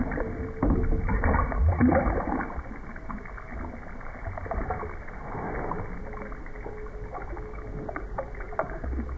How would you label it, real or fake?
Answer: real